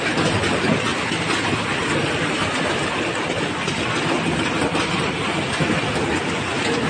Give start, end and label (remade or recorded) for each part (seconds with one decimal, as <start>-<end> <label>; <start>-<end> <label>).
0.0-6.9 recorded